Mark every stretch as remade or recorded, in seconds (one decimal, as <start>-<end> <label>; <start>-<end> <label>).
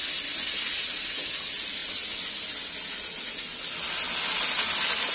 0.0-5.1 recorded